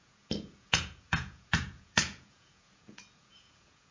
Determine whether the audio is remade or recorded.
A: remade